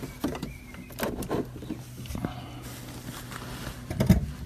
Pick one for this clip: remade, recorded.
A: recorded